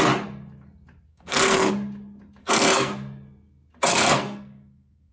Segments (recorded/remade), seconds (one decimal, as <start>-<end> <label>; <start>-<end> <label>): 0.0-1.1 recorded; 1.1-1.7 remade; 1.7-2.4 recorded; 2.4-2.9 remade; 2.9-3.9 recorded; 3.9-5.1 remade